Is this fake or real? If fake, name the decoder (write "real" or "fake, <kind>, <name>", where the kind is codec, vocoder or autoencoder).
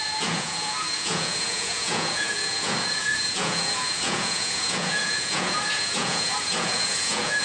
fake, vocoder, Vocos